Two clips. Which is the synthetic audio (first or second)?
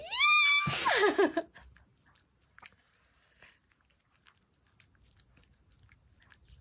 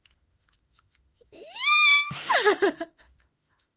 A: second